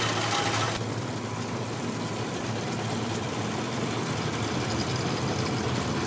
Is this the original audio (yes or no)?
yes